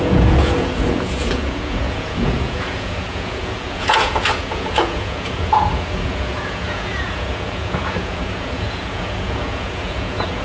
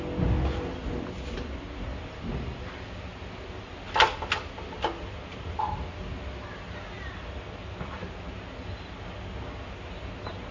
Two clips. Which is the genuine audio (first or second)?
second